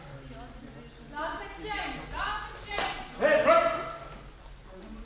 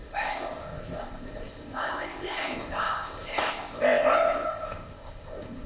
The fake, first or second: second